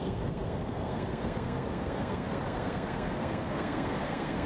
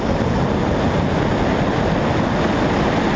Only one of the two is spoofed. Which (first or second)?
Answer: first